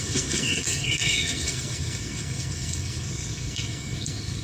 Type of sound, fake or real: fake